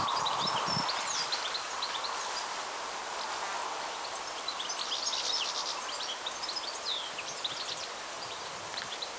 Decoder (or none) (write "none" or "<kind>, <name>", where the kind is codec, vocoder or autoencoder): vocoder, BigVGAN v2